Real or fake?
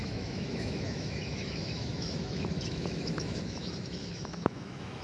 fake